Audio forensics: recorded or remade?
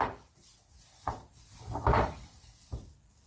remade